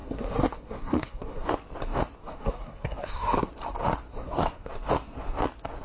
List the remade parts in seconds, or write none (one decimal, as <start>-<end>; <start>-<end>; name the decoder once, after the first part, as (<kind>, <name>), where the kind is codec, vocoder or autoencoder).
0.0-1.5 (codec, SNAC); 2.2-3.5; 4.1-4.7

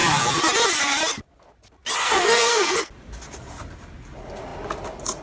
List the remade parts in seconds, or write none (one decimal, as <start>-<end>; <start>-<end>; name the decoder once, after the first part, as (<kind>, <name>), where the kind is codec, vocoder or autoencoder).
2.0-2.9 (codec, SNAC)

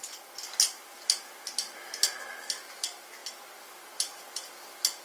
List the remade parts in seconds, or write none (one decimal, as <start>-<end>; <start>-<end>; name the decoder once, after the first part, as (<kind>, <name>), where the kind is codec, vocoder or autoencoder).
none